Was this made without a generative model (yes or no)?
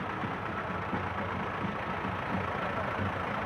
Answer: yes